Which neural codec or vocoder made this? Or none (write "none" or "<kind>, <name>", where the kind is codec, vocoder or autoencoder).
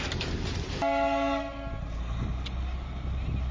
none